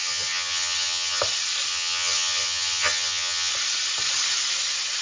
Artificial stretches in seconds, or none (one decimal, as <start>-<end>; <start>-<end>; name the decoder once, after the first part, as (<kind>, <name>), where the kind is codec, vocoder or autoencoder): 0.0-1.2 (vocoder, HiFi-GAN); 1.7-3.5